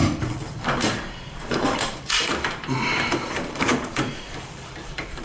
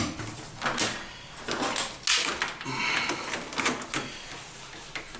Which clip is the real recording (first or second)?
second